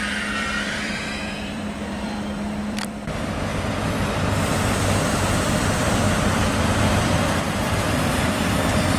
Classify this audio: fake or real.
fake